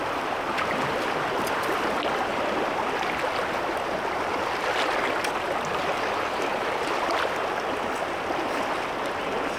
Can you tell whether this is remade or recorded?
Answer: recorded